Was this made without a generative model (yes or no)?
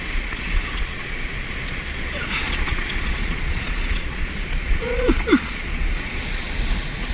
no